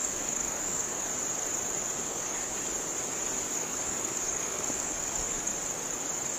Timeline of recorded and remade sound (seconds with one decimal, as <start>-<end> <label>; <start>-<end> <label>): 0.0-1.1 remade; 1.1-2.0 recorded; 2.0-2.5 remade; 2.5-3.5 recorded; 3.5-5.5 remade; 5.5-6.4 recorded